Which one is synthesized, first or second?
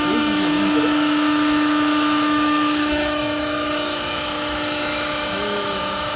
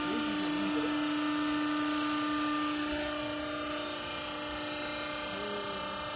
first